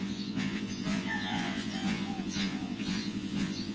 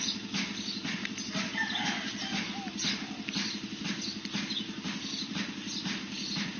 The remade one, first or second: first